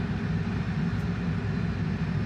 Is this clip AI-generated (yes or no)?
no